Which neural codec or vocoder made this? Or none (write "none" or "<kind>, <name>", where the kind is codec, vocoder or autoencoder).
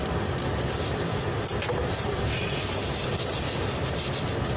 none